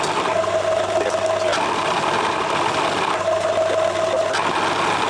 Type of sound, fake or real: real